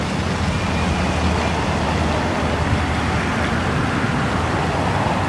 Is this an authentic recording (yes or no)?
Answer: yes